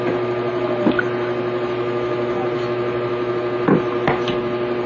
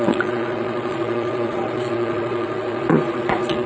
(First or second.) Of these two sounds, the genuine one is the first